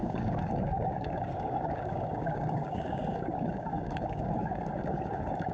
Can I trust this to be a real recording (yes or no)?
no